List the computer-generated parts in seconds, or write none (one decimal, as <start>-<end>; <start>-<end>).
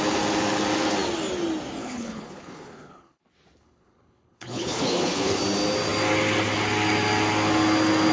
1.8-3.2; 3.6-5.4